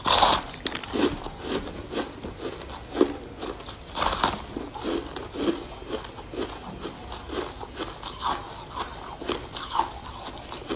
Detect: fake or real real